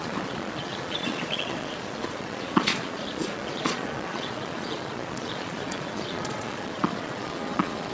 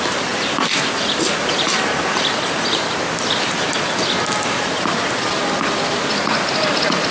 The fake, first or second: first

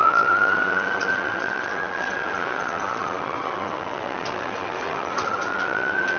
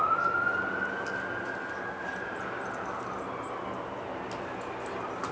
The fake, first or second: first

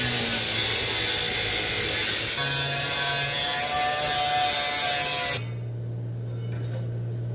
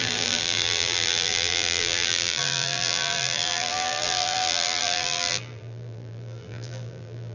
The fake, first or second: second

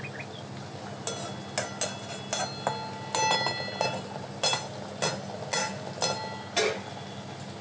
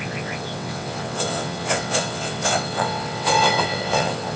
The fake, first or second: second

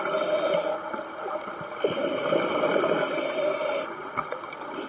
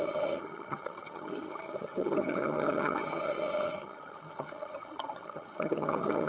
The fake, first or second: second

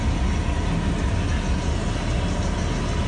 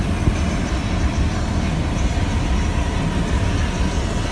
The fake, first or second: second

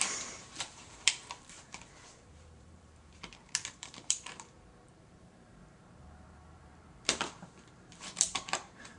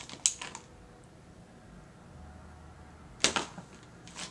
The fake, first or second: first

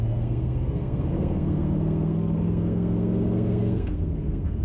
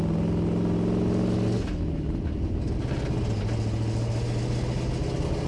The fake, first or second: first